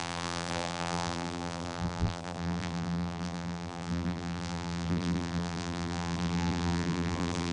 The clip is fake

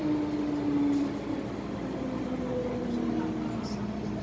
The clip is real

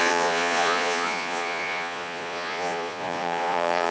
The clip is fake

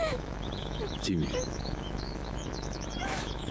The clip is fake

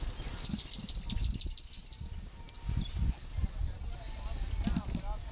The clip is real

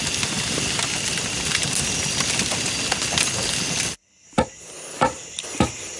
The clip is real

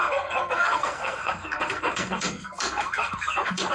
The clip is fake